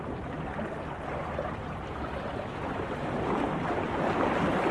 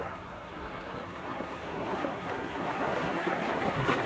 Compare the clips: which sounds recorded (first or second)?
first